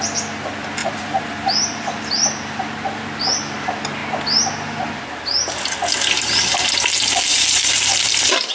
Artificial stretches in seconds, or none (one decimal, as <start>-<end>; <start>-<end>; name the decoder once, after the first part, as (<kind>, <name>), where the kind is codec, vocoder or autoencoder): 0.8-2.1 (vocoder, BigVGAN v2); 7.3-8.5